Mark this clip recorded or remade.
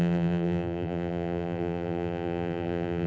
remade